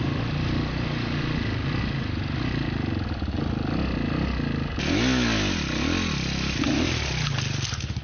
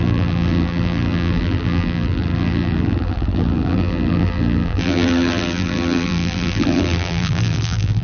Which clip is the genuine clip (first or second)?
first